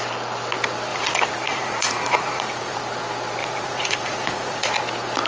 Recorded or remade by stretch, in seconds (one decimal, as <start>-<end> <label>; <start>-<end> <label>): 0.0-0.9 recorded; 0.9-2.8 remade; 2.8-3.4 recorded; 3.4-4.7 remade; 4.7-5.3 recorded